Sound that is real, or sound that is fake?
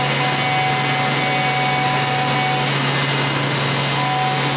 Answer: real